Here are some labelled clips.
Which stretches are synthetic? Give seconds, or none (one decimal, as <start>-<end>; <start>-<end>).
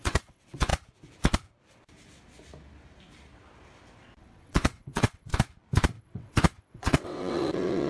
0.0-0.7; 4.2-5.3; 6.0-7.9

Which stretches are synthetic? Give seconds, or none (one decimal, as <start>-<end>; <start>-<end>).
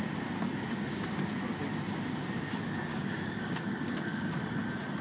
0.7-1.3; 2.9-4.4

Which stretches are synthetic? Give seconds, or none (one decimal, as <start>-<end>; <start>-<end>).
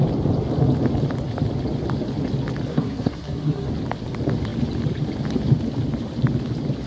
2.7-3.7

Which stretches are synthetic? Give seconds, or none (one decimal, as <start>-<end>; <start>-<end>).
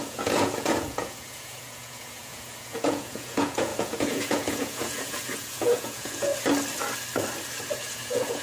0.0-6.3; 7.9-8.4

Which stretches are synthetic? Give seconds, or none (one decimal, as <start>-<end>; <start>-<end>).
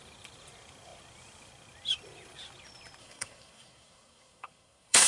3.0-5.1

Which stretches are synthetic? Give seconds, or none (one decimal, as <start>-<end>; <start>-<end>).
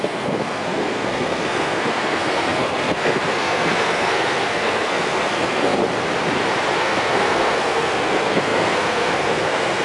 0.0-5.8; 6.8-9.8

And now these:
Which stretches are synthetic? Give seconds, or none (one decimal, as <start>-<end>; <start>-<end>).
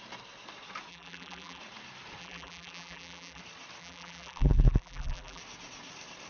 0.9-1.6; 2.2-3.4; 3.8-5.4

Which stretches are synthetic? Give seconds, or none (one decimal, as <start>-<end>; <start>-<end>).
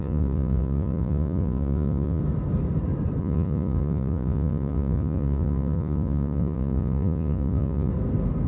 0.0-2.2; 3.2-7.9